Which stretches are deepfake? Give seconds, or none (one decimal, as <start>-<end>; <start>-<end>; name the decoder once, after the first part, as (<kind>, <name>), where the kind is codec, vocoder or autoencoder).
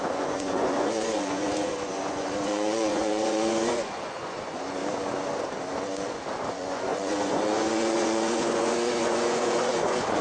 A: 0.0-4.8 (vocoder, Vocos); 6.5-10.2